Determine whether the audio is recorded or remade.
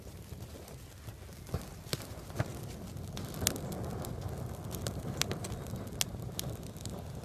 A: recorded